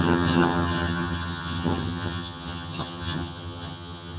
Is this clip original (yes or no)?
no